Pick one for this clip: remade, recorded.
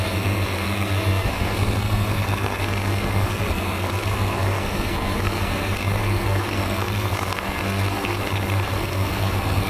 remade